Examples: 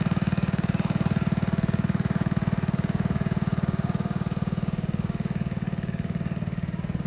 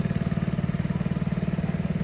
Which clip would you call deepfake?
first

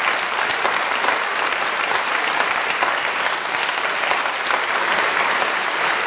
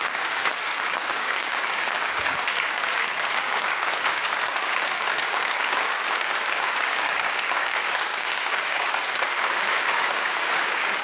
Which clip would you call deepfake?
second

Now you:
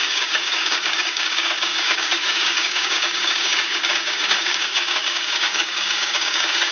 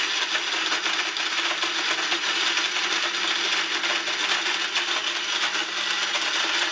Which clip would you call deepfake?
first